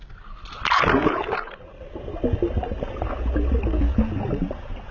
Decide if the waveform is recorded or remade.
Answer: recorded